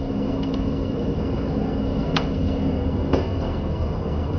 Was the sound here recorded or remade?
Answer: remade